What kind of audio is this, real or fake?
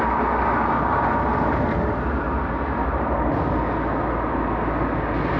real